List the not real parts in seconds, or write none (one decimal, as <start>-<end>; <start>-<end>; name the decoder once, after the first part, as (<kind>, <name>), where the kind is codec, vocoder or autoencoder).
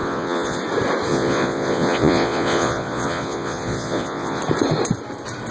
0.0-0.6 (vocoder, Vocos); 1.1-4.4